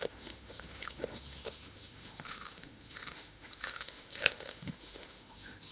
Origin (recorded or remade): remade